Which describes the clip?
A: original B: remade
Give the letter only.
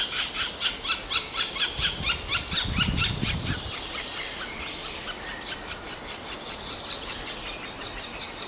A